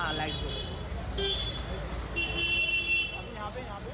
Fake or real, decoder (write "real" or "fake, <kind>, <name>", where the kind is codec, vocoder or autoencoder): real